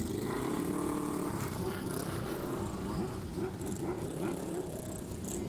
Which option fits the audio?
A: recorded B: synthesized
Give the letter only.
A